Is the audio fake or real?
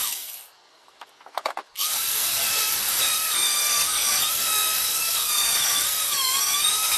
fake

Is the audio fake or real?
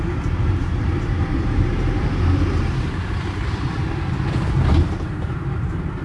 fake